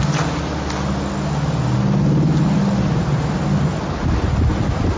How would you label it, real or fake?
real